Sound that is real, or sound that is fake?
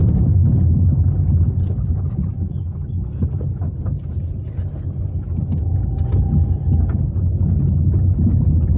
real